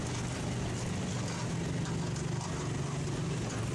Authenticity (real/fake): real